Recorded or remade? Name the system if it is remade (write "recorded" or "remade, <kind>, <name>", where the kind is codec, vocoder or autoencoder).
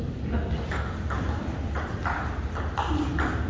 recorded